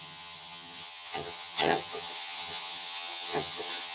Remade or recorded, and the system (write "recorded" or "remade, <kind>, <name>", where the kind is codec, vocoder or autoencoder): remade, vocoder, HiFi-GAN